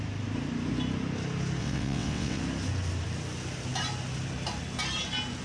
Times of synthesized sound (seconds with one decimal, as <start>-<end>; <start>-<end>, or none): 1.6-2.4